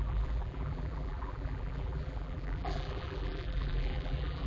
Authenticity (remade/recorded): remade